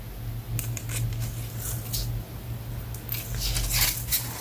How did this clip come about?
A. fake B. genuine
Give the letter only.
B